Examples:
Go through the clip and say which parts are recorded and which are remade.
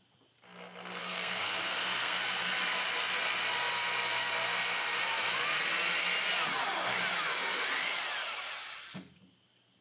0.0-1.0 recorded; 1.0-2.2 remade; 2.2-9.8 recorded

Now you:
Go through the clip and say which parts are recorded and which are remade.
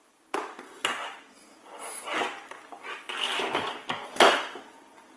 0.0-5.2 recorded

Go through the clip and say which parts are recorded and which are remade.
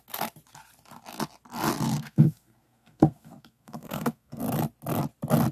0.0-1.9 recorded; 1.9-4.4 remade; 4.4-5.5 recorded